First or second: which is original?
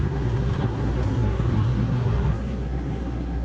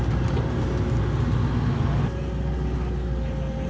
second